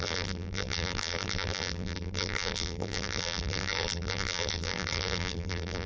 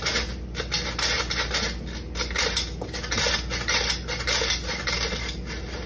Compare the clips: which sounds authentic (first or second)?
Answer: second